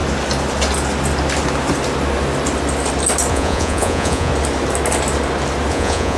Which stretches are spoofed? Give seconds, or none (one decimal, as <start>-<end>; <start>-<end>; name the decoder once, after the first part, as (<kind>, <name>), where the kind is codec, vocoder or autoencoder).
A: 3.3-4.3 (vocoder, Vocos); 5.7-6.2